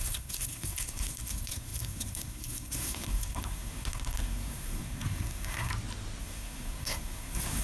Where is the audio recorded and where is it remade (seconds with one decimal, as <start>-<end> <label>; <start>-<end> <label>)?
0.0-5.7 remade; 5.7-6.2 recorded; 6.2-7.6 remade